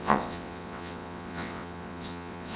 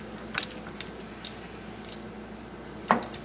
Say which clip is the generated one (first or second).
first